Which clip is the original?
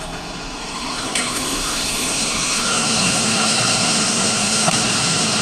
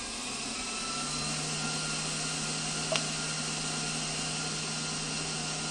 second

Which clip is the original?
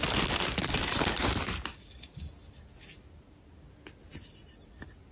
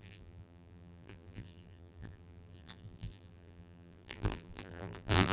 first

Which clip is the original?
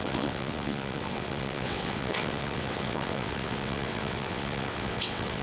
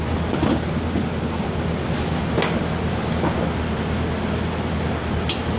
second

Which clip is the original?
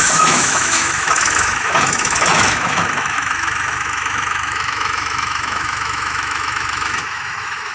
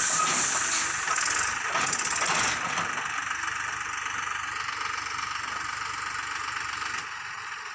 second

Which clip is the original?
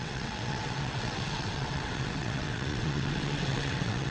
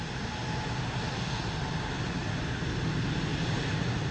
second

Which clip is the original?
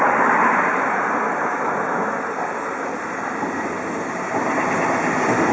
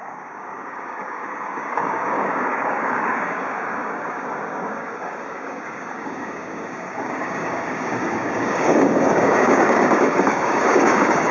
first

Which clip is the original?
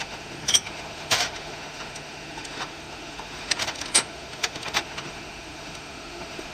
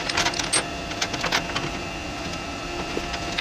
second